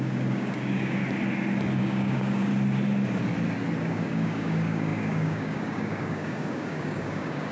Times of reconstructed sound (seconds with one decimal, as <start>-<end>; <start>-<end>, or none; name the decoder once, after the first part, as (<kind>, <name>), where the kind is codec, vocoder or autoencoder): 0.0-1.0 (codec, DAC); 1.8-2.5; 3.8-7.5